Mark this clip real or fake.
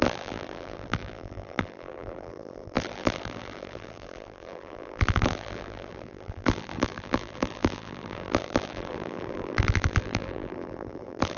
fake